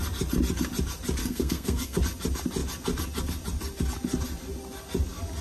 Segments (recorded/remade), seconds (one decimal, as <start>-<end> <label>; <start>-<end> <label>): 0.0-1.2 recorded; 1.2-2.0 remade; 2.0-5.4 recorded